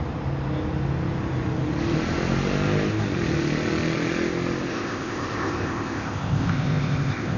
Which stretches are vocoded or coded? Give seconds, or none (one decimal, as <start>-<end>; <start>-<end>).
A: 4.7-7.4